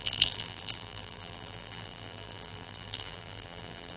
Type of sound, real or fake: fake